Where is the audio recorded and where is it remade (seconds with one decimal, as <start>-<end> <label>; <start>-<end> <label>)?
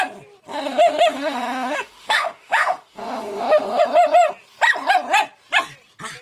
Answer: 0.0-0.5 recorded; 0.5-3.8 remade; 3.8-6.2 recorded